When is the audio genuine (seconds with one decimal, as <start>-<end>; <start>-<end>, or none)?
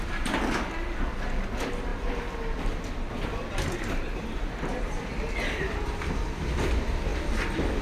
0.0-7.8